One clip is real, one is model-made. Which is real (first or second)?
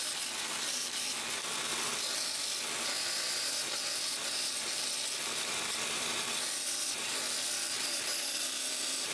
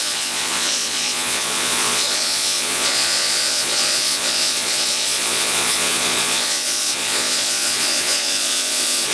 first